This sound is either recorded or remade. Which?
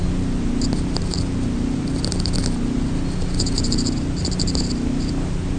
recorded